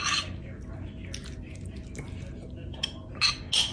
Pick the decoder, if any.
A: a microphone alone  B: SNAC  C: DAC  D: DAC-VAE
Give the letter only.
A